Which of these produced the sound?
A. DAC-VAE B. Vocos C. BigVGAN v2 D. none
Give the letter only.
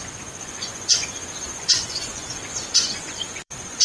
B